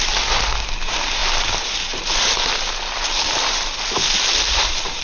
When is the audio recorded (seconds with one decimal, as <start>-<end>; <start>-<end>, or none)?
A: 0.0-5.0